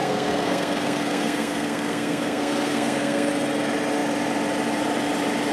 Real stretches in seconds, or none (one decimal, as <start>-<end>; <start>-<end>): 3.3-5.5

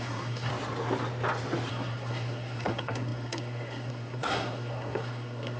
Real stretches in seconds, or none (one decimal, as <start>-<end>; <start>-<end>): 0.5-1.7

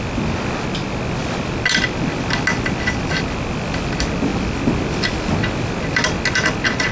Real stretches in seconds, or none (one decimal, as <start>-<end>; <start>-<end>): 0.0-6.9